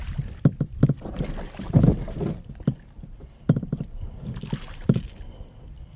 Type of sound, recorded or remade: remade